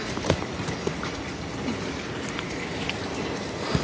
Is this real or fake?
real